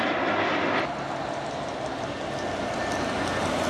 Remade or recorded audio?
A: recorded